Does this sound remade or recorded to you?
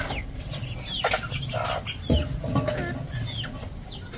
recorded